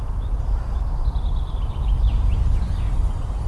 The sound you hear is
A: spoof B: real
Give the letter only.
B